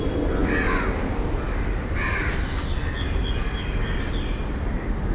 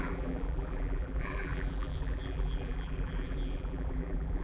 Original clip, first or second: first